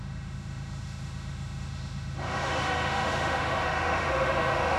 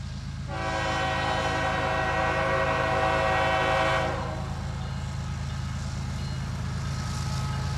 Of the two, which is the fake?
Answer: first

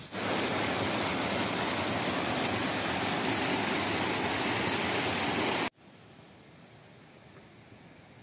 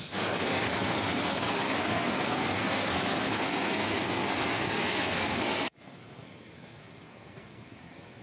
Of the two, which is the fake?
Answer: second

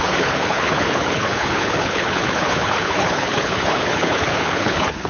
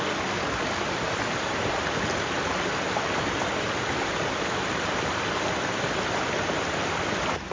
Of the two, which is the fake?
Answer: first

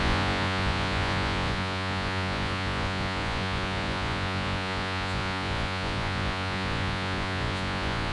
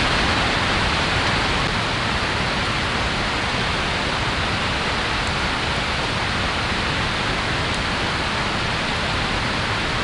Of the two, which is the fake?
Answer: first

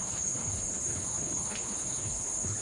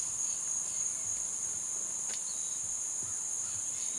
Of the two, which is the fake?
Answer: first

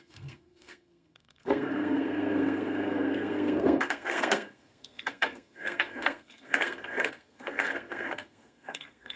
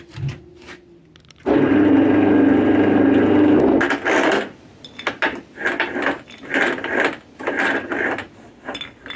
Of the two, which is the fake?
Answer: first